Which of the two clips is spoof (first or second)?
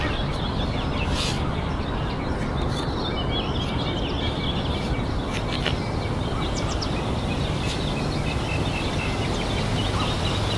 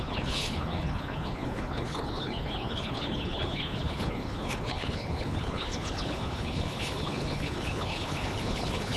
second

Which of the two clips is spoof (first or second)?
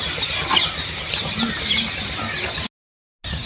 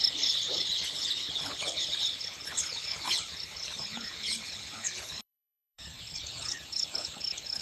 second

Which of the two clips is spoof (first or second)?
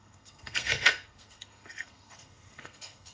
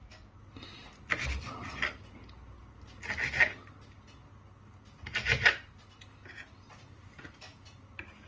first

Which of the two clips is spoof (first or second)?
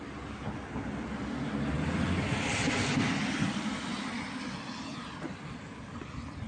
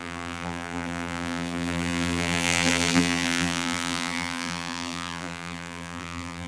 second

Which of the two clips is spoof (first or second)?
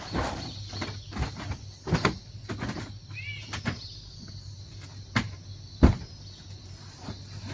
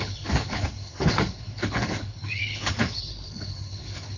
second